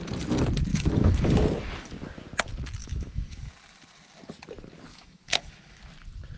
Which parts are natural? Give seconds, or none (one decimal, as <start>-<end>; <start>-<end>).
0.0-0.7; 1.3-2.8; 3.5-4.9; 5.8-6.4